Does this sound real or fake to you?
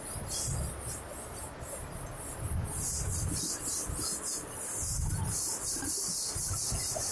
real